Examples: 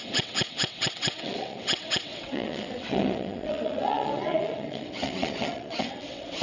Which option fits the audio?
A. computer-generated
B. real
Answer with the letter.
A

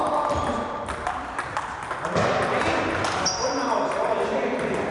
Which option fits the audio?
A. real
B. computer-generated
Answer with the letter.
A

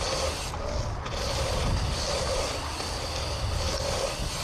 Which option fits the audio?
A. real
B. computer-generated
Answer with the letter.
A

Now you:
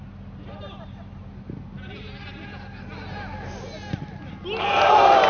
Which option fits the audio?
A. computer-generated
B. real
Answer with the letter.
B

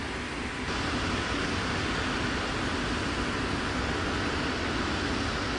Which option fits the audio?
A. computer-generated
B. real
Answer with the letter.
B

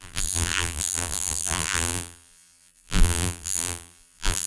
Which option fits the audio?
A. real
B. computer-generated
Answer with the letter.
B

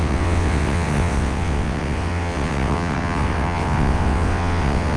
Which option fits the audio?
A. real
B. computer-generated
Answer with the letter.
B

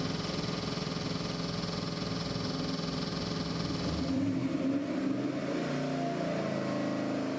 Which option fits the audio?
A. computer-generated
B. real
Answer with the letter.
B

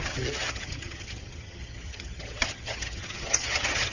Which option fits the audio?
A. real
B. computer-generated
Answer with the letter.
B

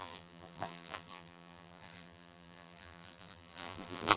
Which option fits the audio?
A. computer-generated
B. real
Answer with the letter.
A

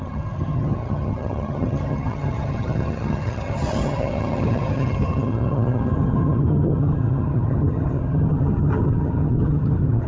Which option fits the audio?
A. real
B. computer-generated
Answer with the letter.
B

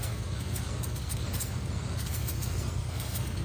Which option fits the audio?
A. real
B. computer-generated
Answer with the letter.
B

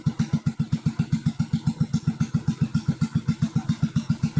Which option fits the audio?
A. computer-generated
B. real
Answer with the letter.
B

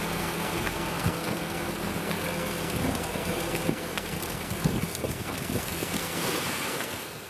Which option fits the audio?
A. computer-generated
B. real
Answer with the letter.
A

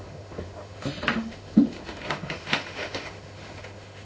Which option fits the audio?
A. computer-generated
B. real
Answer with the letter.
A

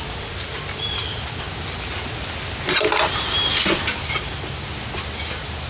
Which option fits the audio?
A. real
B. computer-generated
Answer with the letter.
A